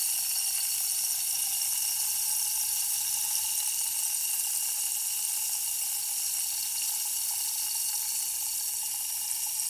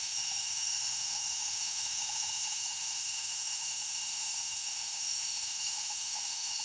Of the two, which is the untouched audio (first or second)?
first